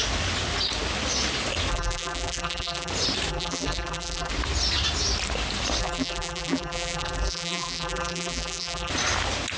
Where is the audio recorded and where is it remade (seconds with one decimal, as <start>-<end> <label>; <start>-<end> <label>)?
0.0-1.7 recorded; 1.7-2.9 remade; 2.9-3.3 recorded; 3.3-4.3 remade; 4.3-5.8 recorded; 5.8-8.9 remade; 8.9-9.6 recorded